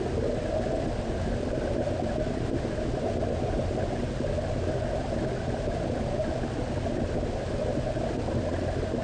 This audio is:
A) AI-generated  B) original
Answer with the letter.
B